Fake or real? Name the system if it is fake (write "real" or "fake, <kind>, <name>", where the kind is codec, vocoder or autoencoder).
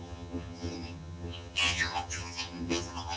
fake, vocoder, HiFi-GAN